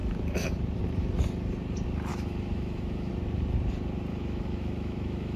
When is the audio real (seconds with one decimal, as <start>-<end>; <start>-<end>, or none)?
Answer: 0.0-2.1; 3.1-4.1